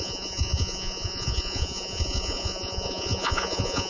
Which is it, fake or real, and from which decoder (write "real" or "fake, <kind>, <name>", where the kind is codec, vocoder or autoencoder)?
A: fake, vocoder, Vocos